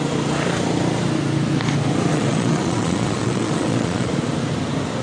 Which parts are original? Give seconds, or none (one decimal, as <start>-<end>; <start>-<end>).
0.0-2.1; 4.1-5.0